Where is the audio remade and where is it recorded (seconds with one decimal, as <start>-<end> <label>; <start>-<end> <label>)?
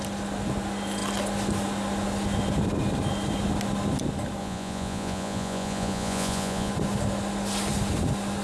0.0-4.4 recorded; 4.4-6.7 remade; 6.7-8.4 recorded